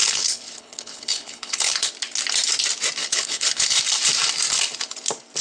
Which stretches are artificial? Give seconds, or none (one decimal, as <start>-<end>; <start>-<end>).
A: 0.0-1.9; 3.0-3.8

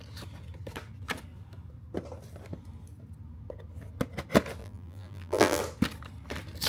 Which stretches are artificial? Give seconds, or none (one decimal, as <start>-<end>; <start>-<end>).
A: 4.6-5.6